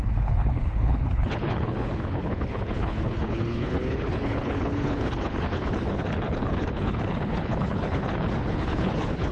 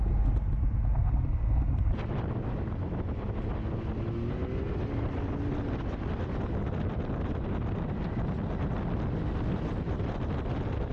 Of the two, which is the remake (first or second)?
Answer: first